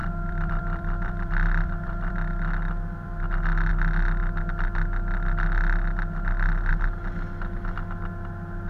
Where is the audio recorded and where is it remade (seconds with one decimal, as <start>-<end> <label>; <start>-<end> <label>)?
0.0-3.7 remade; 3.7-8.7 recorded